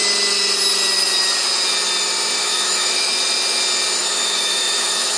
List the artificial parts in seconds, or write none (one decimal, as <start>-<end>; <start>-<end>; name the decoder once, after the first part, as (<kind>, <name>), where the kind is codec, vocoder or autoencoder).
2.4-3.1 (autoencoder, DAC-VAE); 4.0-5.2